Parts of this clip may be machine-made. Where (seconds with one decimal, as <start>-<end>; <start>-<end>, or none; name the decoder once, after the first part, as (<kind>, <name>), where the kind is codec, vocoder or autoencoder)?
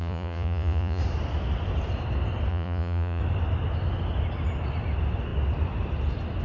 0.0-1.0 (vocoder, Vocos); 2.5-3.2